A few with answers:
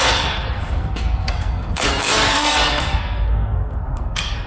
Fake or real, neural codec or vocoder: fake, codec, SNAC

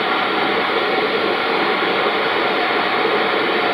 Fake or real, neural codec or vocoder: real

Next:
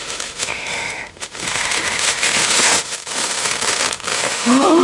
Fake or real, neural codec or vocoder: fake, autoencoder, DAC-VAE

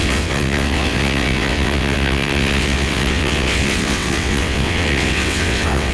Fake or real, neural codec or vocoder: fake, vocoder, WaveNeXt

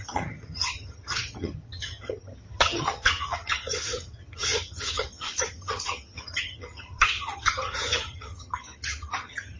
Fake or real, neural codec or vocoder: fake, vocoder, HiFi-GAN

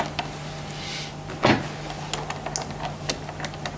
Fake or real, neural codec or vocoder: real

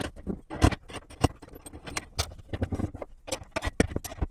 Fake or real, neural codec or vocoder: real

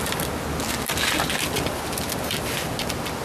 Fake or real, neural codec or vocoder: real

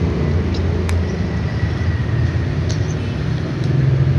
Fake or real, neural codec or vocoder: real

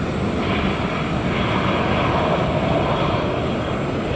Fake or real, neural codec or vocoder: real